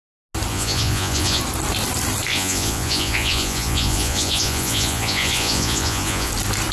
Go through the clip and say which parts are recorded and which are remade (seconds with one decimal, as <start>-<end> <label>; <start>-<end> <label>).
0.0-0.5 recorded; 0.5-1.4 remade; 1.4-2.3 recorded; 2.3-6.3 remade; 6.3-6.7 recorded